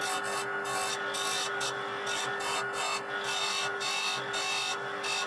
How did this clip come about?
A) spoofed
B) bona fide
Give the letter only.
B